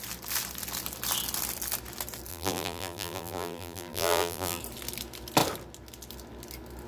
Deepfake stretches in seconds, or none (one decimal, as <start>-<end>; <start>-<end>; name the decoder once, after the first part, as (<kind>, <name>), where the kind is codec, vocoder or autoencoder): 2.3-4.6 (vocoder, BigVGAN v2)